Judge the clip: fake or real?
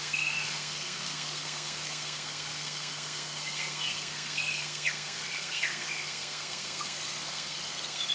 fake